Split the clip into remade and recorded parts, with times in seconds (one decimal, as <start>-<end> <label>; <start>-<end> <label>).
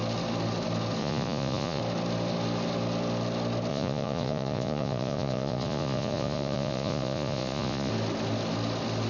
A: 0.0-1.0 recorded; 1.0-1.8 remade; 1.8-3.7 recorded; 3.7-7.9 remade; 7.9-9.1 recorded